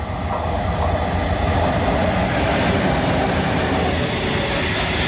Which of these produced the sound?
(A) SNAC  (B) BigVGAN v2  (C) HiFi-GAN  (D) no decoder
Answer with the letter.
D